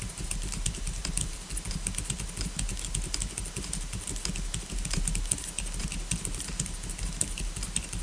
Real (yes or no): yes